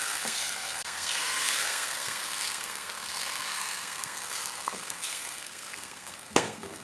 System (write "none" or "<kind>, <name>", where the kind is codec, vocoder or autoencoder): codec, SNAC